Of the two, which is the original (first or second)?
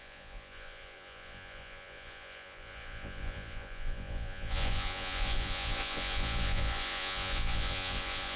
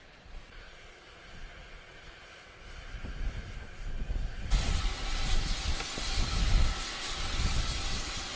second